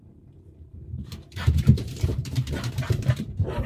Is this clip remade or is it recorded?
remade